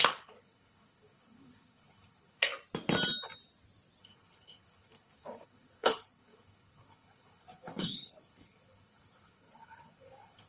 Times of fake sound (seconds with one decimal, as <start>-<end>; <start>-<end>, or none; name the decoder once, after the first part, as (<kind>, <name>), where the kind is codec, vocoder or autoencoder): 0.0-2.5 (codec, HILCodec); 4.0-10.5